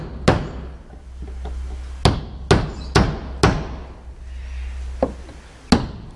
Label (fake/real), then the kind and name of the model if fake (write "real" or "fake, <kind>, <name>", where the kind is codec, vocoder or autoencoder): real